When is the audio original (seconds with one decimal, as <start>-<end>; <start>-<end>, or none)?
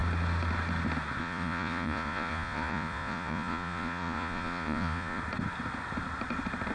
0.0-1.2; 5.2-6.7